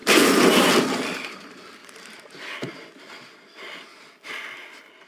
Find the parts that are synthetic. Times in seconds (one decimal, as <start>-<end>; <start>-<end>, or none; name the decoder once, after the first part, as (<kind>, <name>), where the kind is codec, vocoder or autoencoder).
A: 1.8-2.7 (vocoder, BigVGAN v2)